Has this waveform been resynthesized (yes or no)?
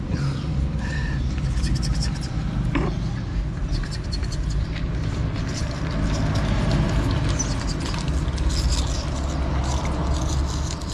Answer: no